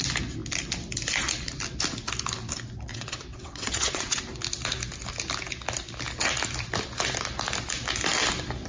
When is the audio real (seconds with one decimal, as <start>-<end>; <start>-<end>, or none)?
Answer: 0.0-2.9; 4.2-8.7